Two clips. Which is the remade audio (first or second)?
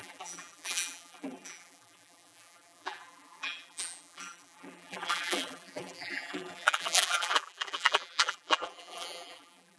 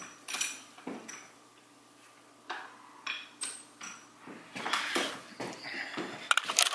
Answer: first